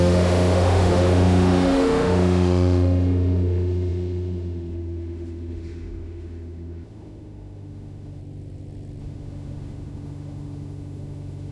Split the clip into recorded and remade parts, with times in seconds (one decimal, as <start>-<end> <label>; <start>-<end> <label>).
0.0-8.2 remade; 8.2-9.0 recorded; 9.0-11.5 remade